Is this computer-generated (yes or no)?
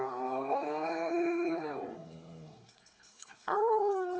yes